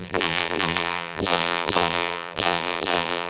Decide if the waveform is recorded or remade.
remade